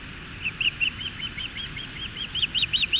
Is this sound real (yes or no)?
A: no